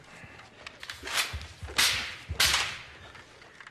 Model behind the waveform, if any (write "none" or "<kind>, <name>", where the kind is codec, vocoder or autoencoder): none